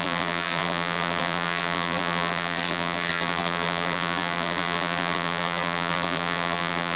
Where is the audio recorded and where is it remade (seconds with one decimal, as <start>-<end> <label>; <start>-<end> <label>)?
0.0-7.0 remade